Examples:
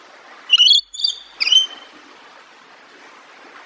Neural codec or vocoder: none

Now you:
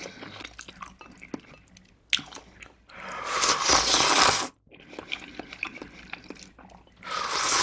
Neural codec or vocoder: none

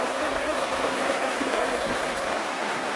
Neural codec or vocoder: codec, SNAC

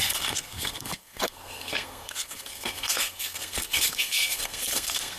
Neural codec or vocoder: codec, SNAC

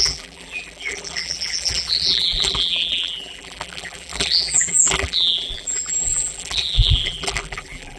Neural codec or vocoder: vocoder, BigVGAN v2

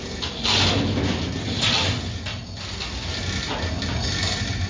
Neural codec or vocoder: none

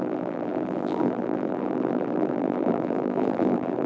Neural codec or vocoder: vocoder, BigVGAN v2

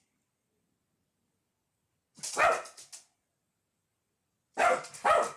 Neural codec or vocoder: none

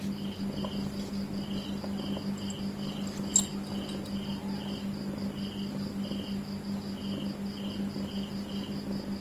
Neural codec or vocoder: none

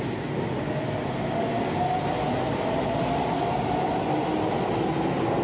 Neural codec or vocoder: none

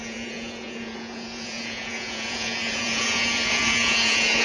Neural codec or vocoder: vocoder, Vocos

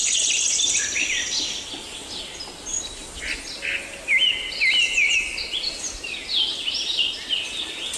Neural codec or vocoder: none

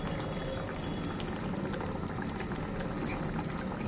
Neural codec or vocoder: none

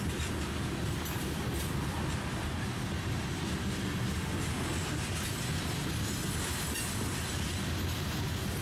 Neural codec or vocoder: none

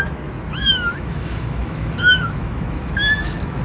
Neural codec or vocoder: autoencoder, DAC-VAE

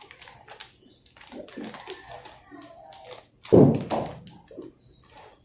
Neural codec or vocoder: none